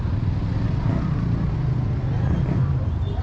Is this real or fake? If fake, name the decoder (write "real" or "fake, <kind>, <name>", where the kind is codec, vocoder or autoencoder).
real